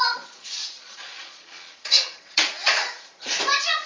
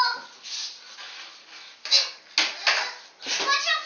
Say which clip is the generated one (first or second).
first